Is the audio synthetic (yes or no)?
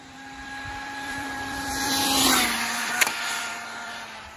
yes